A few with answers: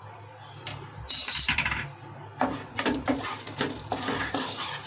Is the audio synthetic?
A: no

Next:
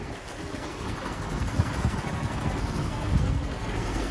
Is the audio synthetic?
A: yes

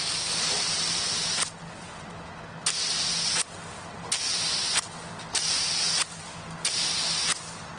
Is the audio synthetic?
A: no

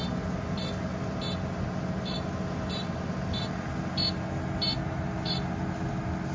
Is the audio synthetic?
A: no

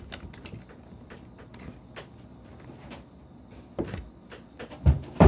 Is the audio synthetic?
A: no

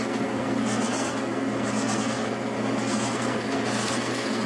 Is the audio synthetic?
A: yes